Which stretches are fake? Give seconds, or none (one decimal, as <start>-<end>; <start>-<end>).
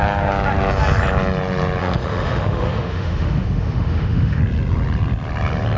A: 1.8-4.4